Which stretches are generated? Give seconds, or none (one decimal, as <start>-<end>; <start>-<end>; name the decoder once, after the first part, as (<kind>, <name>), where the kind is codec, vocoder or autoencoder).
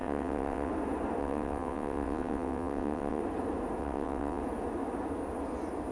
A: 0.0-0.7 (vocoder, WaveNeXt); 1.2-3.2; 3.8-4.4